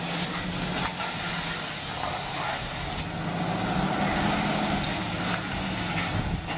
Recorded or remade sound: recorded